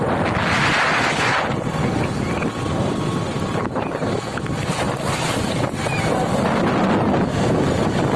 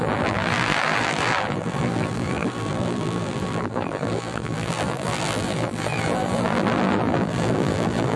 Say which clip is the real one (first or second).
first